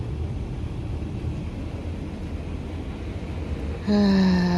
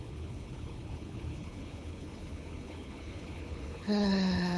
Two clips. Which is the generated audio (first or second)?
second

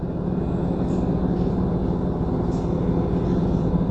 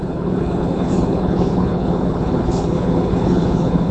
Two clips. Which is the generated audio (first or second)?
second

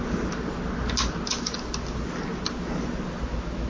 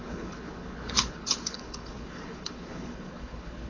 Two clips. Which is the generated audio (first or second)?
second